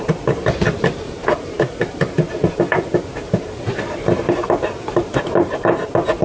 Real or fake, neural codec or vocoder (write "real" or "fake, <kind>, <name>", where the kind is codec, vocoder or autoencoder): fake, vocoder, BigVGAN v2